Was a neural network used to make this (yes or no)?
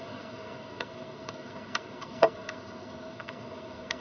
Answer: yes